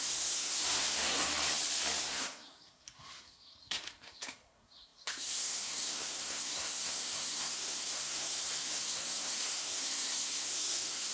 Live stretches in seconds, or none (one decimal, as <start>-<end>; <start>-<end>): 1.3-2.0